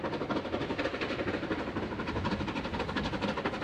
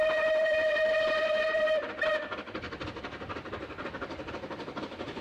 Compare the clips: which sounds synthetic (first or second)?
second